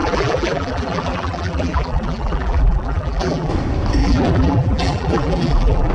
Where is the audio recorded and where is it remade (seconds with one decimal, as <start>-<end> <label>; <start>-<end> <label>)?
0.0-3.5 remade; 3.5-4.0 recorded; 4.0-5.9 remade